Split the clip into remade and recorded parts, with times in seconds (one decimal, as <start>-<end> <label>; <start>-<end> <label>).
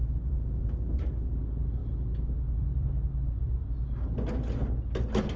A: 0.0-5.4 recorded